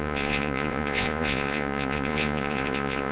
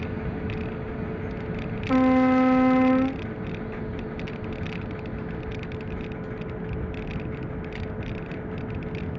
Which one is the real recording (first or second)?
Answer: second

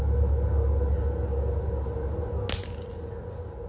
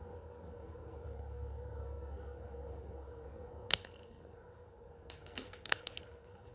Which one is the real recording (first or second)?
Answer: first